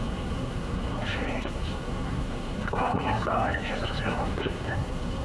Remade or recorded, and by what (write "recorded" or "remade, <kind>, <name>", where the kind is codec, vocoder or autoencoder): remade, codec, SNAC